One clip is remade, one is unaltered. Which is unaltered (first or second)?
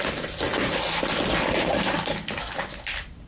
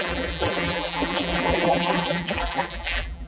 first